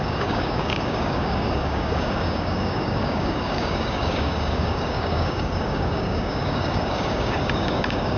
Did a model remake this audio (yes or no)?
yes